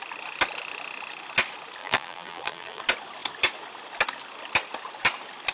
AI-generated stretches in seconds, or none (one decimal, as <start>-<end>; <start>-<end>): 1.8-2.8